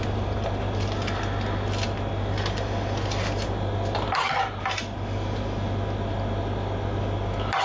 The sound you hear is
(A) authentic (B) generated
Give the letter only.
A